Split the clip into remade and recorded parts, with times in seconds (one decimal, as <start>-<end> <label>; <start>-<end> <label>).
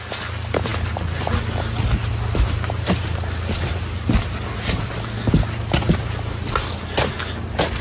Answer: 0.0-7.8 recorded